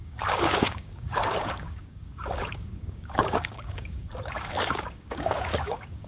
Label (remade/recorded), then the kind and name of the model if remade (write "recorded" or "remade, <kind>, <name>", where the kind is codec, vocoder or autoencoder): remade, codec, DAC